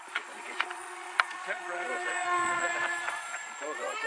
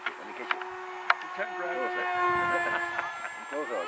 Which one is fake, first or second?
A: first